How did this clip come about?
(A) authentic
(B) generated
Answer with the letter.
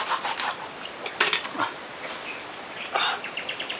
B